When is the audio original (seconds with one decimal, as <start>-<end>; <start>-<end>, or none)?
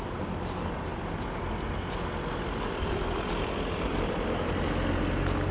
0.0-5.5